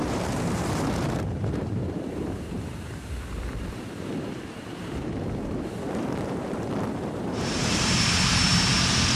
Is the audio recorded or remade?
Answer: remade